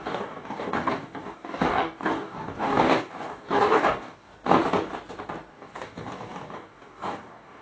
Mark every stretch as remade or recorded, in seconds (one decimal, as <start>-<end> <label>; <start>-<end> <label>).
0.0-4.3 remade; 4.3-5.5 recorded; 5.5-7.6 remade